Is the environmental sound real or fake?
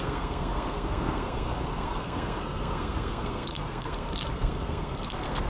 fake